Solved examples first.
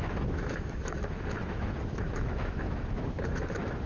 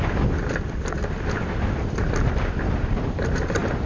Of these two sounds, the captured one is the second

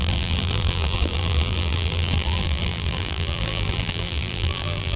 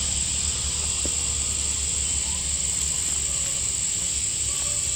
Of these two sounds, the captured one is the second